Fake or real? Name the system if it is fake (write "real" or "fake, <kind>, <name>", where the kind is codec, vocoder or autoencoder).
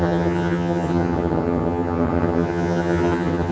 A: fake, vocoder, HiFi-GAN